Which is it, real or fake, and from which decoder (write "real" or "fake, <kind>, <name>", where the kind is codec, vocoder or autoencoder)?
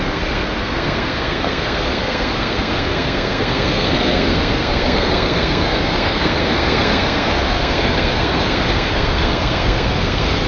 fake, codec, SNAC